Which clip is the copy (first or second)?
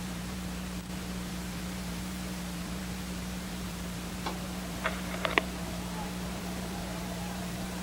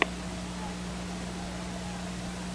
first